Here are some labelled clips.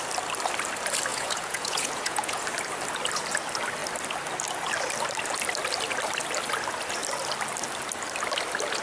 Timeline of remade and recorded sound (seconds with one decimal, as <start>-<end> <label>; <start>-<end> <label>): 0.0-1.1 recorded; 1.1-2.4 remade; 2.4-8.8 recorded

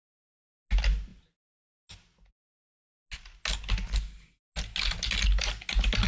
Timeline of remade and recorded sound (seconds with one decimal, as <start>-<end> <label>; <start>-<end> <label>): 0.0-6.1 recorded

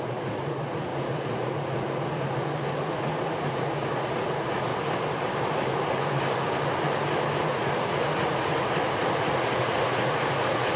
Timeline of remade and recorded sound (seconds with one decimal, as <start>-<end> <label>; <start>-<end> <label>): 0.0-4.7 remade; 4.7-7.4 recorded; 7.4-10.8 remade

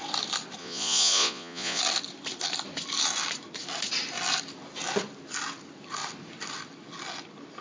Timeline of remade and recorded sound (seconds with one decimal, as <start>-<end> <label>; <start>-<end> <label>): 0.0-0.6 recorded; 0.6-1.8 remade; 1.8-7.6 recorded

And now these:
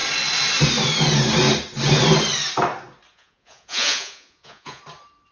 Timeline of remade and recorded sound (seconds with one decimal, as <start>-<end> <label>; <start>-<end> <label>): 0.0-3.1 recorded; 3.1-4.8 remade; 4.8-5.3 recorded

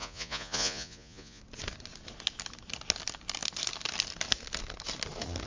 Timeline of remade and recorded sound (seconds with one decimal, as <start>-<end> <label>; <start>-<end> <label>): 0.0-1.4 remade; 1.4-5.5 recorded

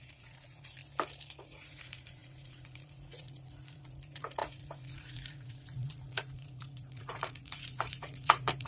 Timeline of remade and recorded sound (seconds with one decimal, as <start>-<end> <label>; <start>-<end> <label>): 0.0-0.8 remade; 0.8-1.4 recorded; 1.4-8.7 remade